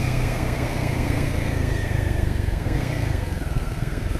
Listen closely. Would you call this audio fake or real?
fake